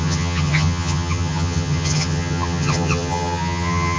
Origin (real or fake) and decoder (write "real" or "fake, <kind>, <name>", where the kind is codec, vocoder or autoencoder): fake, vocoder, HiFi-GAN